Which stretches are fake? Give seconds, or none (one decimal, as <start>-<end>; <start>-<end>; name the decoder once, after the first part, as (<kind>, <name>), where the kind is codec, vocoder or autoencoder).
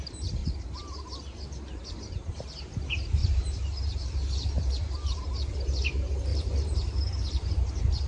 3.2-5.2 (vocoder, BigVGAN v2); 6.3-8.1